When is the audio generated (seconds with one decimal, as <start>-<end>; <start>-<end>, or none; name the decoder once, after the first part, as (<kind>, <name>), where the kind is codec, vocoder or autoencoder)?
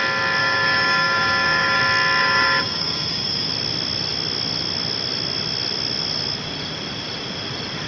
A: 0.4-1.8 (codec, DAC); 2.2-3.5